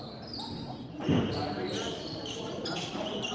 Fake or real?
fake